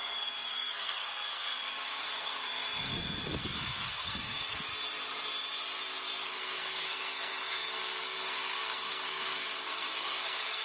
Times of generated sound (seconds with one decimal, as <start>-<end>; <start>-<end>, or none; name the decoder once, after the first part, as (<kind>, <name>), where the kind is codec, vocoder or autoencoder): 0.0-4.7 (codec, SNAC); 6.3-10.6